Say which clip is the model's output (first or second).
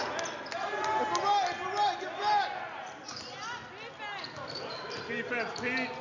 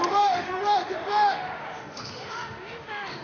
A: second